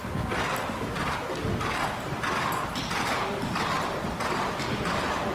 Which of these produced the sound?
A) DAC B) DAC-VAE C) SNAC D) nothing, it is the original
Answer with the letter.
D